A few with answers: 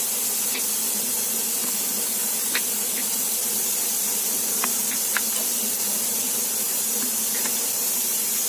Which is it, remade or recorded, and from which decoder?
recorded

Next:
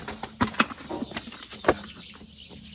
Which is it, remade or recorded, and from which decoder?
recorded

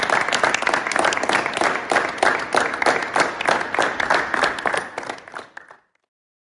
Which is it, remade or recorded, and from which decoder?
recorded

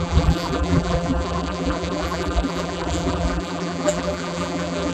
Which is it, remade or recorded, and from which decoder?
remade, vocoder, BigVGAN v2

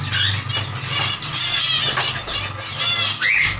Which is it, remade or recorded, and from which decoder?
recorded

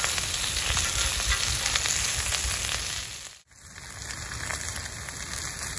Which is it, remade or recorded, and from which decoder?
recorded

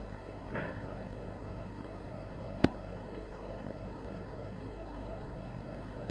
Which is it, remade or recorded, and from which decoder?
remade, codec, SNAC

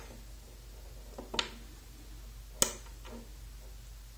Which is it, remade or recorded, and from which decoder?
recorded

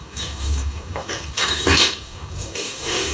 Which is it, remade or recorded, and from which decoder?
remade, codec, DAC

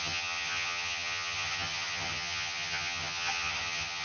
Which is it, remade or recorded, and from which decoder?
remade, vocoder, HiFi-GAN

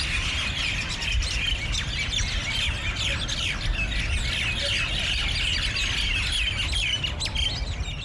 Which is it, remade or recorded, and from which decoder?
recorded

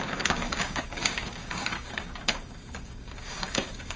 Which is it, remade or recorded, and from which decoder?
remade, codec, DAC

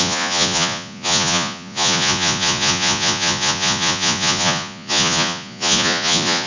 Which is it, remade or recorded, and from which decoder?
remade, vocoder, Vocos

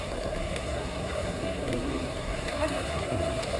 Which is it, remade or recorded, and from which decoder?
remade, codec, SNAC